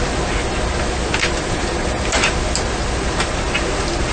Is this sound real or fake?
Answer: real